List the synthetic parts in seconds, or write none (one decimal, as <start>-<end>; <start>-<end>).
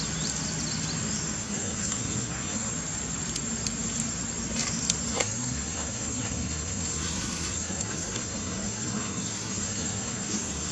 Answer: 1.4-2.7; 5.1-10.7